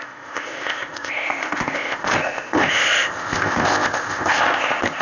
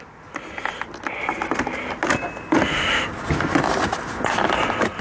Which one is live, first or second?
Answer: second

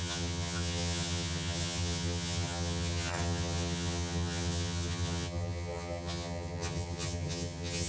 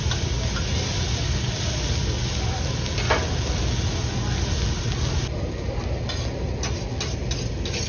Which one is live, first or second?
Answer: second